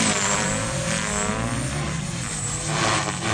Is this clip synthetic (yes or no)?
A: no